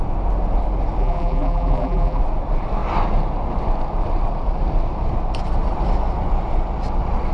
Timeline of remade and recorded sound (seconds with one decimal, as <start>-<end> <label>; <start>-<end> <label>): 0.0-1.0 recorded; 1.0-2.2 remade; 2.2-7.3 recorded